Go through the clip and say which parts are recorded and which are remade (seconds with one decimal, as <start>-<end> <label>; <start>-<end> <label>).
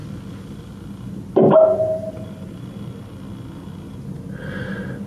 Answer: 0.0-5.1 recorded